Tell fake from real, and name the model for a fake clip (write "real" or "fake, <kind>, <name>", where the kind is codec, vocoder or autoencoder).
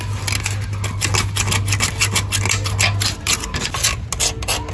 real